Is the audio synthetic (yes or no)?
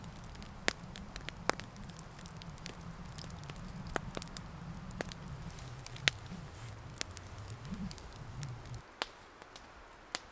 no